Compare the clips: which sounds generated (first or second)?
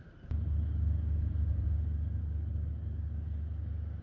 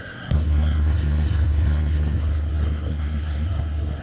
second